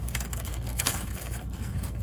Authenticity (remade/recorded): remade